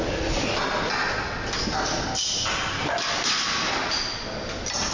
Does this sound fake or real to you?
real